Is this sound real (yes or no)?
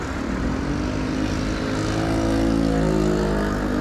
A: yes